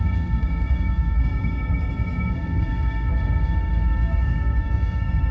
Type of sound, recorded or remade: remade